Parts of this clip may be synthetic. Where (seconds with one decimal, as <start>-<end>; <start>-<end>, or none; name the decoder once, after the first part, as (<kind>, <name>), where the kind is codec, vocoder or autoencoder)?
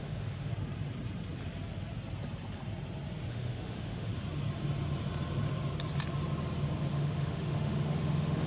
0.0-0.5 (autoencoder, DAC-VAE); 3.3-4.1; 6.9-8.5